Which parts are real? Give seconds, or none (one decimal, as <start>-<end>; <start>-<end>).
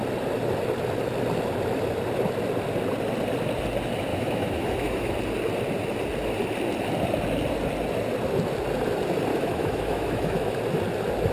0.0-4.1; 5.1-9.3; 10.6-11.3